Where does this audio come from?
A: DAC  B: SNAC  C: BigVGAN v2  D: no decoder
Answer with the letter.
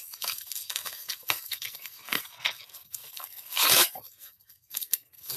B